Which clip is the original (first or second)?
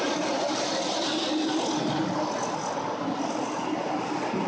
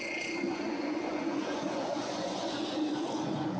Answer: first